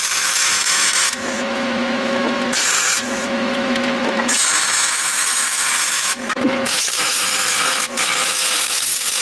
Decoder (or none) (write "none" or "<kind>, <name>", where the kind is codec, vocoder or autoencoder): autoencoder, DAC-VAE